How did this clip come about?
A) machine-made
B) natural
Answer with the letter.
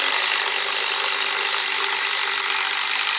B